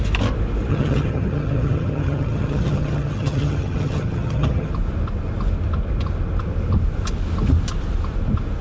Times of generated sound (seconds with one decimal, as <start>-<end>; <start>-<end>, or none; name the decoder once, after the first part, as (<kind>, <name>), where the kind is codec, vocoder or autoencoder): 0.7-4.7 (vocoder, HiFi-GAN)